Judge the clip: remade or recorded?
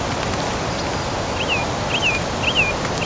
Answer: recorded